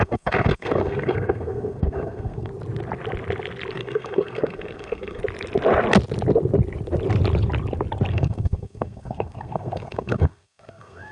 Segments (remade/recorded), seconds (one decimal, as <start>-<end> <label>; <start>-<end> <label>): 0.0-2.5 remade; 2.5-3.7 recorded; 3.7-5.2 remade; 5.2-8.1 recorded; 8.1-11.1 remade